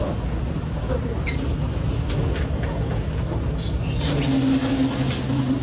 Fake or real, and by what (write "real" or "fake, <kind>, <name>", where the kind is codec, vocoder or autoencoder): real